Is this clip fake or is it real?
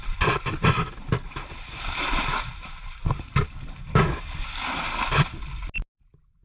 real